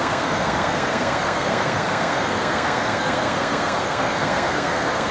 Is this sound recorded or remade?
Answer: remade